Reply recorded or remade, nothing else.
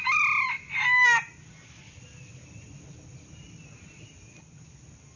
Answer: recorded